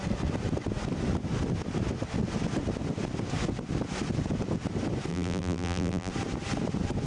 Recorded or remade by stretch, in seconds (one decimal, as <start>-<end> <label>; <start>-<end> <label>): 0.0-5.1 recorded; 5.1-6.1 remade; 6.1-7.1 recorded